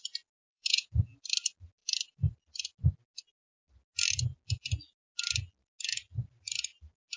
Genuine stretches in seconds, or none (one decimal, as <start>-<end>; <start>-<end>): 0.0-0.4; 1.0-7.2